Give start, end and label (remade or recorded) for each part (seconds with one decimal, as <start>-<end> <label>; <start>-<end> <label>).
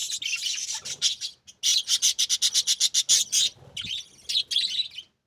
0.0-1.7 recorded; 1.7-2.3 remade; 2.3-5.3 recorded